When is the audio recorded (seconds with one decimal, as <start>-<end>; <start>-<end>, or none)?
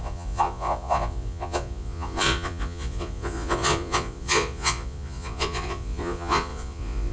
none